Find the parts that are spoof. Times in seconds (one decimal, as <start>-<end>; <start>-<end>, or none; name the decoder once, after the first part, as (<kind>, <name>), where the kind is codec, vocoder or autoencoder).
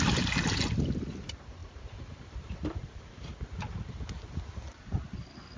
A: 1.6-3.1 (vocoder, BigVGAN v2)